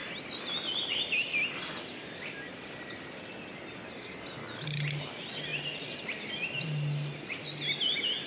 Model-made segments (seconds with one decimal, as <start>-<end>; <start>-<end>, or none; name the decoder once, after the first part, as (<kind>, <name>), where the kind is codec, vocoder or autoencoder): none